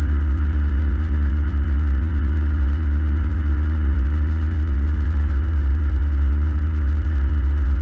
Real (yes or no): no